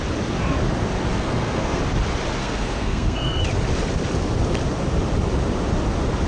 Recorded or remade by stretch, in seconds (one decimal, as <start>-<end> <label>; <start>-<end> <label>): 0.0-1.1 recorded; 1.1-1.8 remade; 1.8-2.4 recorded; 2.4-3.4 remade; 3.4-6.3 recorded